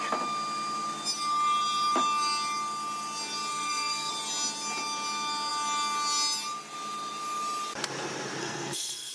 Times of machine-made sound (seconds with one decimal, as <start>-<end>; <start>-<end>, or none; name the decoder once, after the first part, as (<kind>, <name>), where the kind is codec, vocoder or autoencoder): 3.5-4.1 (codec, SNAC); 8.4-9.1